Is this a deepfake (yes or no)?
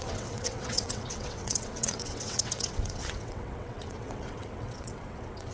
yes